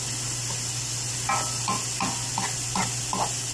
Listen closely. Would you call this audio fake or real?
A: real